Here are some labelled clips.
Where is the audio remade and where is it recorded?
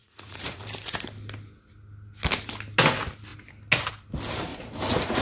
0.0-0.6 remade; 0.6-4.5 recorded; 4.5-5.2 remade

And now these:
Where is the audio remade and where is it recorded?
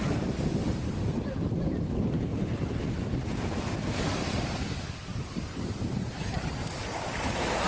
0.0-0.6 recorded; 0.6-1.2 remade; 1.2-2.3 recorded; 2.3-2.9 remade; 2.9-5.1 recorded; 5.1-6.7 remade; 6.7-7.7 recorded